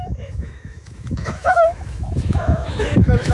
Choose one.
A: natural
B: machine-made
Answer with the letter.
B